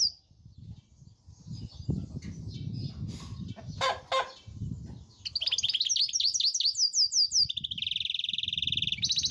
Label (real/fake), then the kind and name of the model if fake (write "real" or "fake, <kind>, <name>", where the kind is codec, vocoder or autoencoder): real